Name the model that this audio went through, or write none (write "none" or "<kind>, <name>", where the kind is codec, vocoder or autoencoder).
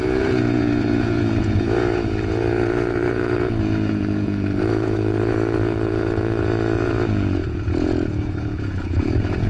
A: vocoder, Vocos